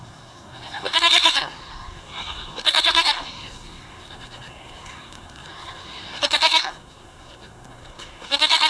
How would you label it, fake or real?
fake